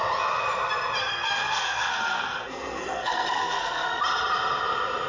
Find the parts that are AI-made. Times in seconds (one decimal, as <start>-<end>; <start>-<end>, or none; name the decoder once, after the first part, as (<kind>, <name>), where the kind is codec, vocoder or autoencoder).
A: 1.0-4.0 (codec, SNAC)